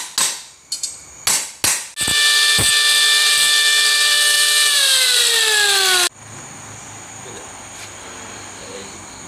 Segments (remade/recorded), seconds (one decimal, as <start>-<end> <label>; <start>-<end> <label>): 0.0-3.2 recorded; 3.2-4.8 remade; 4.8-9.3 recorded